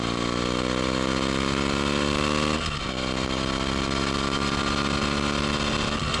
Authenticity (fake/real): real